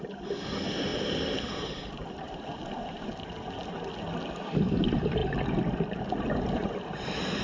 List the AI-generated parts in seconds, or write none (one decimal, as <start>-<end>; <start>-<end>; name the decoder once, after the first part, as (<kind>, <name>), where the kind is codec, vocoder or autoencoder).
0.9-3.1 (vocoder, BigVGAN v2)